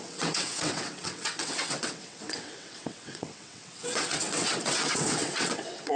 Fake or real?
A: fake